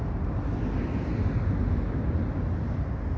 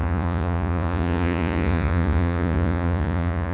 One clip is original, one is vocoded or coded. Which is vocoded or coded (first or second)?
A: second